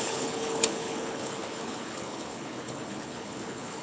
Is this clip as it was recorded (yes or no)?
no